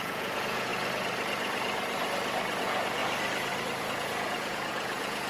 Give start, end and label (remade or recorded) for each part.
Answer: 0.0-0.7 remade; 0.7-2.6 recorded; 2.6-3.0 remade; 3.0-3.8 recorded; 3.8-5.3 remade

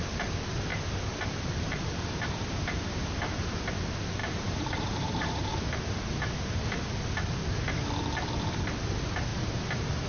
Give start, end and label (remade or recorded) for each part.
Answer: 0.0-0.7 recorded; 0.7-3.6 remade; 3.6-4.2 recorded; 4.2-6.8 remade; 6.8-9.3 recorded; 9.3-10.1 remade

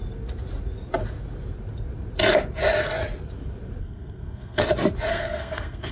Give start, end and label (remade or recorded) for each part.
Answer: 0.0-3.8 recorded; 3.8-4.6 remade; 4.6-5.1 recorded; 5.1-5.9 remade